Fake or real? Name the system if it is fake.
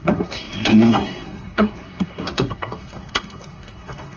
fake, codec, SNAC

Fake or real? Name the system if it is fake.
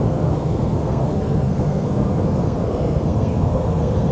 fake, codec, SNAC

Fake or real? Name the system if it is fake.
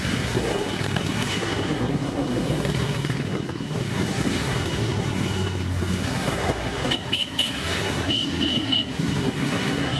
fake, codec, SNAC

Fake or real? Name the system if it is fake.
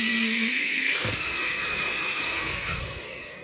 fake, codec, SNAC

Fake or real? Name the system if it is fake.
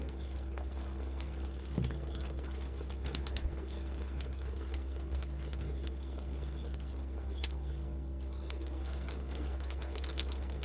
fake, codec, SNAC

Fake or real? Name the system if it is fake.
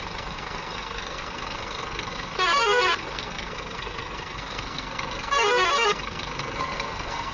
fake, codec, SNAC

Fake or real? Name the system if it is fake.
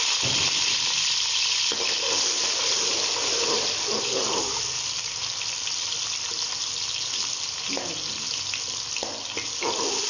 real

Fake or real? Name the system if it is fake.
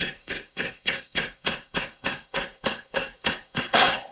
fake, codec, SNAC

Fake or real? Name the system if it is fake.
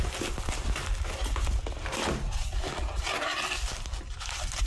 real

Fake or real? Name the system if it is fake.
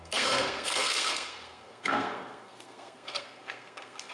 fake, codec, SNAC